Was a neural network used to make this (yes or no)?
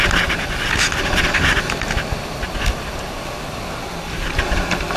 no